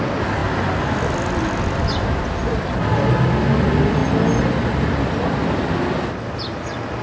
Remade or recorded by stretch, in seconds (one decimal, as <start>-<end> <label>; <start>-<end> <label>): 0.0-7.0 recorded